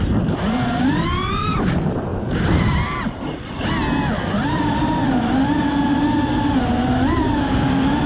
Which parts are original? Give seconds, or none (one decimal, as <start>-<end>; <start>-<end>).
0.0-8.1